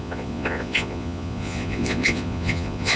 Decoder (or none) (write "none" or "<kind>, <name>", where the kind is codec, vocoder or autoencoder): vocoder, Vocos